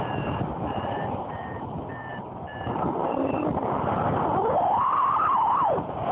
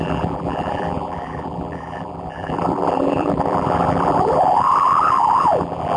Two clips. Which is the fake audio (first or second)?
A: second